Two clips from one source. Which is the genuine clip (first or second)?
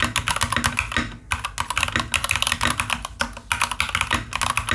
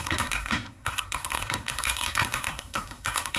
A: first